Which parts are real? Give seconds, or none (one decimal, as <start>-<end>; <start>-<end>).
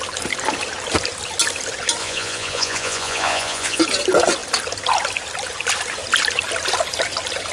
0.0-2.0; 3.8-7.5